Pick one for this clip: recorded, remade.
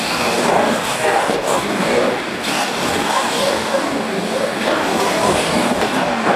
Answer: remade